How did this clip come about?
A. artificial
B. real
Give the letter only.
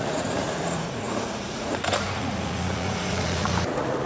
A